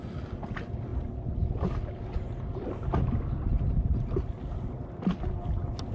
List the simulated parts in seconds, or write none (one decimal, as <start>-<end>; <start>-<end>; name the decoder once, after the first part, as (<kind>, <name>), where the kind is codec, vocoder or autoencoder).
none